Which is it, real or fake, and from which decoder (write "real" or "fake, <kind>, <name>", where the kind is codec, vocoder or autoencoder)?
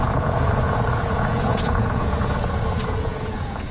fake, vocoder, Vocos